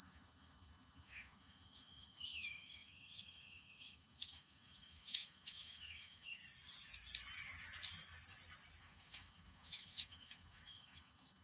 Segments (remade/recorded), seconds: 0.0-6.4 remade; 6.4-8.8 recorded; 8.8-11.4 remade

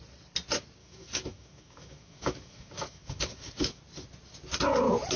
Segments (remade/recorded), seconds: 0.0-0.8 recorded; 0.8-3.8 remade; 3.8-5.2 recorded

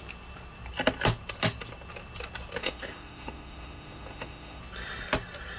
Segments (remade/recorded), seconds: 0.0-2.6 recorded; 2.6-4.6 remade; 4.6-5.6 recorded